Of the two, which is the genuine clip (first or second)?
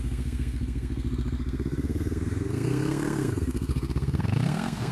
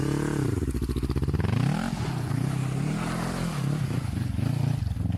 second